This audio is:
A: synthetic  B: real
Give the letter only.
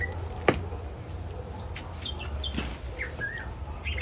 B